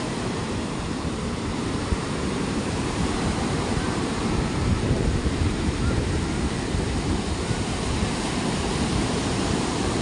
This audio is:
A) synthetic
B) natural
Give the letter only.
A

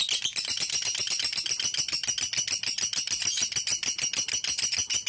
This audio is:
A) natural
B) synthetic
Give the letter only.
A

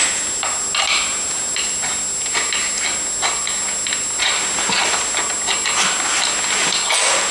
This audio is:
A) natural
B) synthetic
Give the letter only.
A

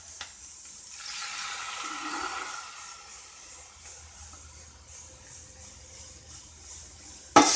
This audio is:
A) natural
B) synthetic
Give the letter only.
A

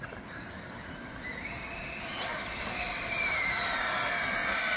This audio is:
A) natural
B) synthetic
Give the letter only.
A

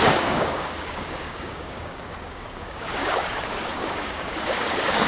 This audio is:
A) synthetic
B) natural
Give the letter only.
A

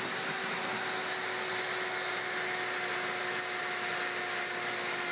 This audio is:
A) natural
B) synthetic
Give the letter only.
A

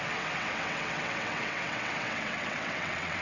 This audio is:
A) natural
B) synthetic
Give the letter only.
B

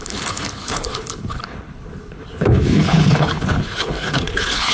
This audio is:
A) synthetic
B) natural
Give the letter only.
A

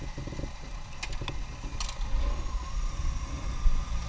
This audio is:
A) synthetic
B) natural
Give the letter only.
B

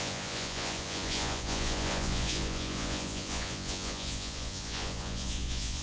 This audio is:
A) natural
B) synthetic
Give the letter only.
B